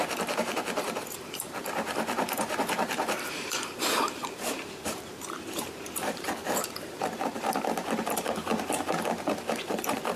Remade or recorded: remade